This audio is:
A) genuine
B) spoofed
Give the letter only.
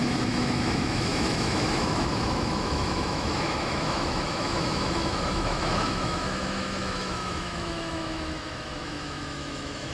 B